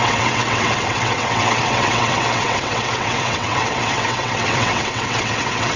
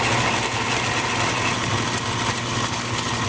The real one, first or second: second